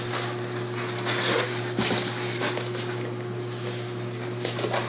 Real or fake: real